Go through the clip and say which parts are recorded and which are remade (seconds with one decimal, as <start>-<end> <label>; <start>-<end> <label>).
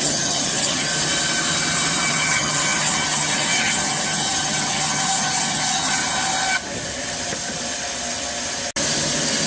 0.0-0.9 remade; 0.9-2.1 recorded; 2.1-6.0 remade; 6.0-9.5 recorded